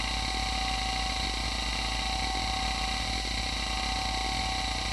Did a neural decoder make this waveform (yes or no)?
no